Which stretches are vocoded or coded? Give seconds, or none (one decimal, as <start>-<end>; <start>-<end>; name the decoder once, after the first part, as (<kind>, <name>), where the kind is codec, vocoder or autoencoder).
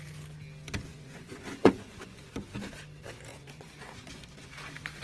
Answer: 0.9-2.3 (vocoder, Vocos); 3.3-4.5